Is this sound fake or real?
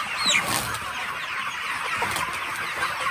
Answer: real